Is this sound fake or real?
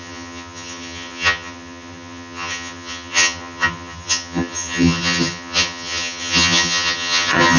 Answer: fake